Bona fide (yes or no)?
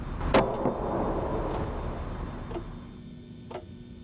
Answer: yes